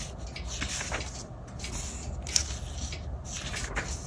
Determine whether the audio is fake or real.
real